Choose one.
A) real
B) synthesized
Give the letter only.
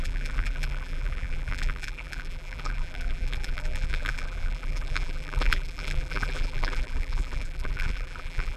B